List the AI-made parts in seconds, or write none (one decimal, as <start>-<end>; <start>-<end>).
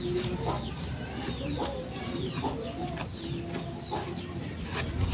2.0-2.5